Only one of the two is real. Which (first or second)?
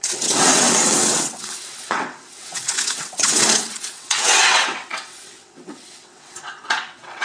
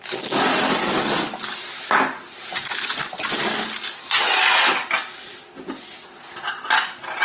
second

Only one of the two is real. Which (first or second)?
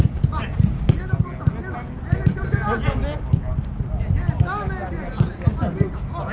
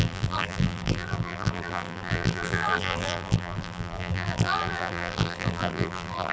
first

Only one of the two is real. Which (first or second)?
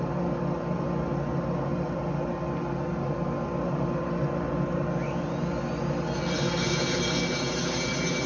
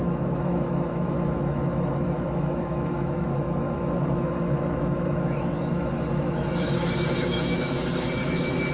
first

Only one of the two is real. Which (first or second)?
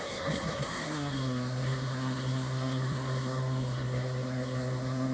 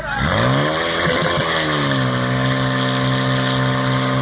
second